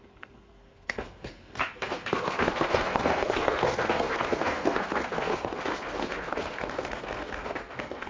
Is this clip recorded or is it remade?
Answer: remade